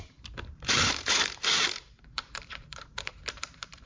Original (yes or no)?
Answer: no